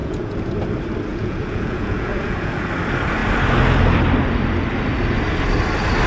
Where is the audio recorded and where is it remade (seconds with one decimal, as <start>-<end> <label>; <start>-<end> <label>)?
0.0-0.5 remade; 0.5-1.1 recorded; 1.1-2.7 remade; 2.7-6.1 recorded